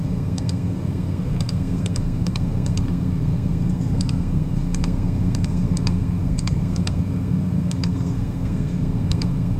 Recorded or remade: remade